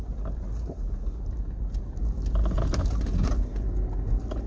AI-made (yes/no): no